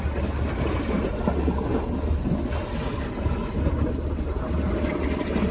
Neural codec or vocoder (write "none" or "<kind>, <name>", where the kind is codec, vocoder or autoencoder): none